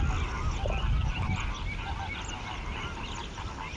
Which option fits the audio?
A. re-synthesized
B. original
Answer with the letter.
B